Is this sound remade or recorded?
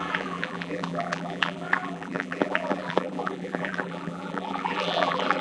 remade